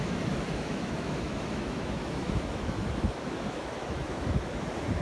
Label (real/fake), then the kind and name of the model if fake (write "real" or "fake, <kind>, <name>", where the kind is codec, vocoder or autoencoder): fake, autoencoder, DAC-VAE